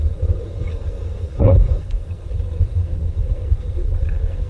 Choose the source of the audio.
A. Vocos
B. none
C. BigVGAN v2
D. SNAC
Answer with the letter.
D